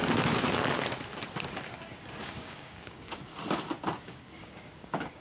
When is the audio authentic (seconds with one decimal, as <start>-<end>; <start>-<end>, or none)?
0.0-2.2; 3.3-4.0